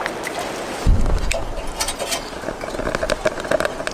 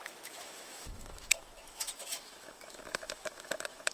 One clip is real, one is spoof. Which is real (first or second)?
first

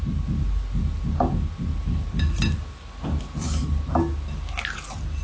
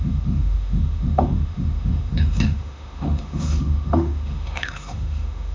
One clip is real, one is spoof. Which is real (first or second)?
first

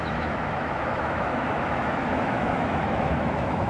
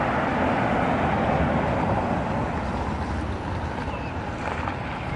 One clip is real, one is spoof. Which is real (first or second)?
second